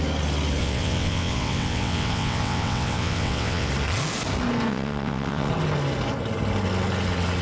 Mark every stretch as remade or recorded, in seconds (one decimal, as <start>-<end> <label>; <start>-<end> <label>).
0.0-0.6 recorded; 0.6-3.7 remade; 3.7-4.7 recorded; 4.7-5.5 remade; 5.5-7.4 recorded